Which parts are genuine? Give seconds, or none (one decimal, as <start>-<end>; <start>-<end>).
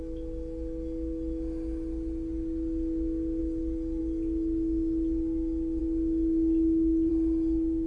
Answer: 0.0-7.9